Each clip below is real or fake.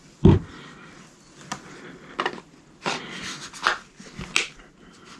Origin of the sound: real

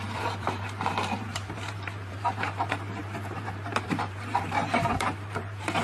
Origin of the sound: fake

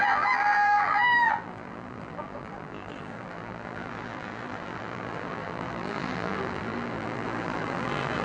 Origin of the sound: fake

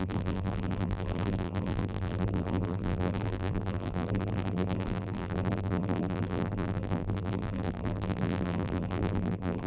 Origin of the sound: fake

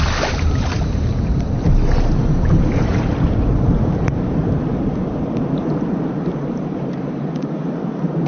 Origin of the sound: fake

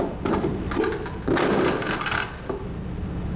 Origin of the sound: real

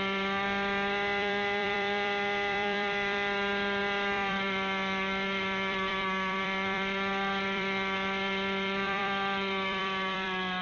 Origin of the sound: fake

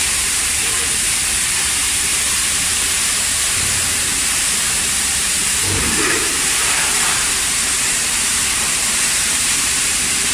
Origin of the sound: fake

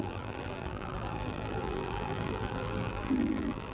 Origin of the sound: fake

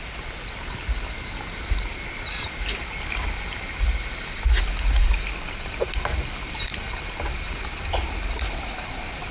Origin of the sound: real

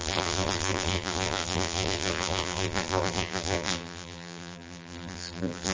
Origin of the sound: fake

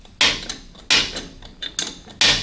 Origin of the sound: real